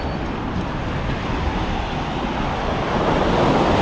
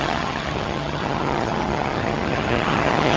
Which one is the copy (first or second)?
second